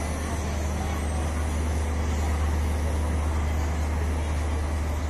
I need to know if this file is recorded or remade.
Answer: recorded